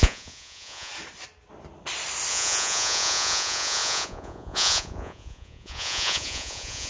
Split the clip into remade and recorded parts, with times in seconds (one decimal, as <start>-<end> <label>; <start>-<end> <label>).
0.0-0.9 remade; 0.9-2.3 recorded; 2.3-6.9 remade

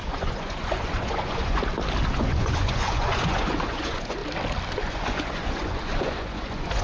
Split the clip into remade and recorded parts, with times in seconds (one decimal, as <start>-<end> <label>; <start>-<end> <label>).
0.0-1.6 remade; 1.6-2.1 recorded; 2.1-4.2 remade; 4.2-4.7 recorded; 4.7-6.8 remade

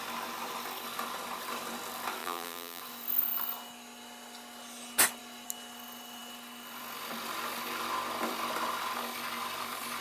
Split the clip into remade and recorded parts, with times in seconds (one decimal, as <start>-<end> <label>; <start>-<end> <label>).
0.0-2.2 recorded; 2.2-2.8 remade; 2.8-10.0 recorded

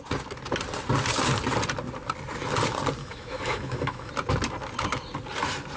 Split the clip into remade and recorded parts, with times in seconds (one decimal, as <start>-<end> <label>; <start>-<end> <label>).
0.0-3.0 recorded; 3.0-4.1 remade; 4.1-5.8 recorded